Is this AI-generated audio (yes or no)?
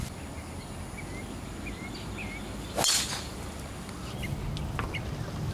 no